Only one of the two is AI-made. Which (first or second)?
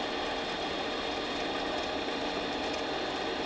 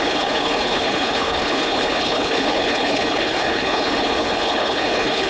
second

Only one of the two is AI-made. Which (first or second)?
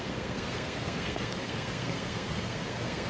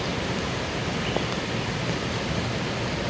first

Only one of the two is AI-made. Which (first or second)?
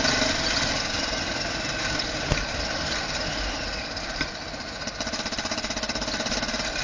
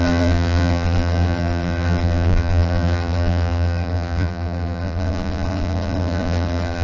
second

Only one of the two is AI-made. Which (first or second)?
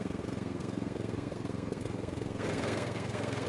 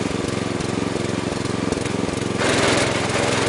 first